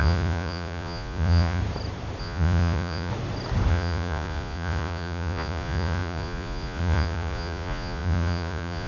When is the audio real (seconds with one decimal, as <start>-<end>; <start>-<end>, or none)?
1.6-2.2; 3.1-3.7